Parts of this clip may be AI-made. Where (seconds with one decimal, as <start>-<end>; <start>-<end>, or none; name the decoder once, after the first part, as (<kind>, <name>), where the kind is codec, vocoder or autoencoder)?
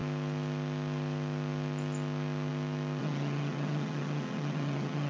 3.0-5.1 (vocoder, HiFi-GAN)